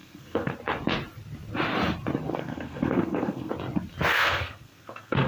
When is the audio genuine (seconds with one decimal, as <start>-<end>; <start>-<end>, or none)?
0.5-2.3; 3.5-4.1